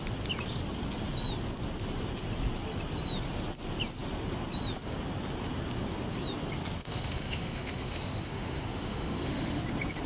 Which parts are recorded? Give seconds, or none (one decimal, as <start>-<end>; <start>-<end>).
0.0-6.8; 9.6-10.1